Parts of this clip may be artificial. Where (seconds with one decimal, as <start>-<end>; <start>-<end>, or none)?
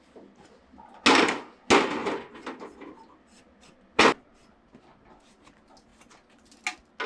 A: none